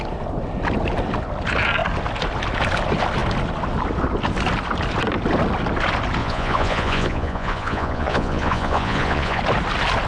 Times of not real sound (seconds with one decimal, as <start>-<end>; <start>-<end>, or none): 6.2-9.4